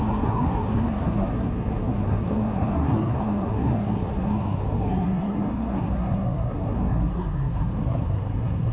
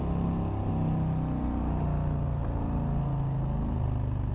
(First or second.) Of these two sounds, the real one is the second